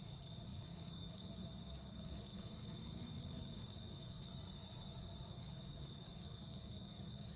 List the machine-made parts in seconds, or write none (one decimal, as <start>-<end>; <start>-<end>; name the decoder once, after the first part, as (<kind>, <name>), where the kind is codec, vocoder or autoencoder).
0.0-4.3 (codec, DAC); 5.3-7.4